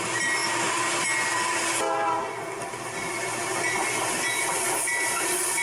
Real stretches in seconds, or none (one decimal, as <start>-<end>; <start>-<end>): 0.0-5.6